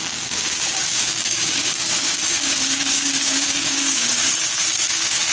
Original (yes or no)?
no